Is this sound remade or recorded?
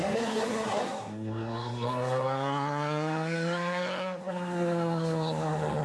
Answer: remade